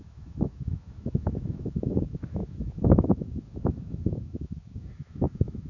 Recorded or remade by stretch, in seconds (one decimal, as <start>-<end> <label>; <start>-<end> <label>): 0.0-5.7 remade